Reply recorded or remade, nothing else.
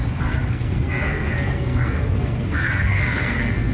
remade